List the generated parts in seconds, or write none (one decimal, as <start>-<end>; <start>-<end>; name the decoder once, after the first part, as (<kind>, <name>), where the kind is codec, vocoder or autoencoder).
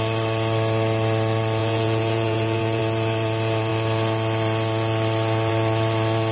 1.6-2.8 (vocoder, Vocos)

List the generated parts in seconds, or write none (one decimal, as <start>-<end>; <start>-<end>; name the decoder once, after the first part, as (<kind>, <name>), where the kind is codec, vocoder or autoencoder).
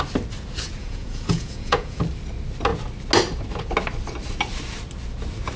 0.8-2.0 (vocoder, Vocos)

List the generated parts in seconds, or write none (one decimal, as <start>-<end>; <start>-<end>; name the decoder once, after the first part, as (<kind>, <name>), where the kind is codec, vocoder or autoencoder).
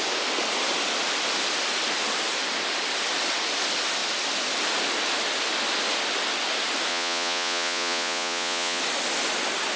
6.9-8.8 (vocoder, Vocos)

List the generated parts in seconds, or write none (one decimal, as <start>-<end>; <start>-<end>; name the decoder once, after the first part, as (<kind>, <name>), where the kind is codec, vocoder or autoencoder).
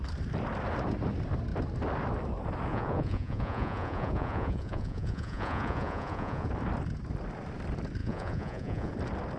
2.7-6.5 (vocoder, Vocos); 8.0-8.9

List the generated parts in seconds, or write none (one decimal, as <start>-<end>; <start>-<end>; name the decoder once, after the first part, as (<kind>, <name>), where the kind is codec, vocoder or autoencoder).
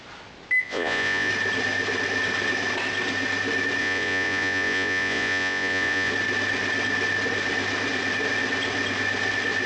0.6-1.3 (vocoder, Vocos); 3.8-6.1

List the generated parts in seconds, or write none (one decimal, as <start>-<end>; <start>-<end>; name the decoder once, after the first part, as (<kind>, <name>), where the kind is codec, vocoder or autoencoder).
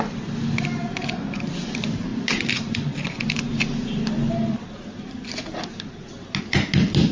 none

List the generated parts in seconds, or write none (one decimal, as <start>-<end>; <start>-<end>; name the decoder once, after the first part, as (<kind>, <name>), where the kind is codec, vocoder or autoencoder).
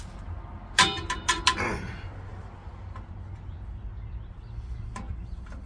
none